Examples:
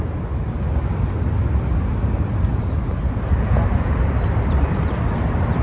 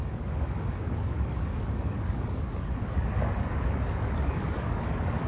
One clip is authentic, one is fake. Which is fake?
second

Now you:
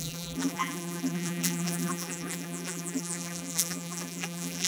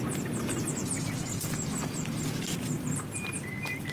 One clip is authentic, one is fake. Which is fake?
first